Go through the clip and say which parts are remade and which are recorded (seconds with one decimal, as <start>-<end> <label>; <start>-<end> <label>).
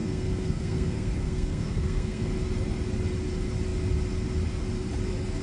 0.0-2.3 remade; 2.3-5.4 recorded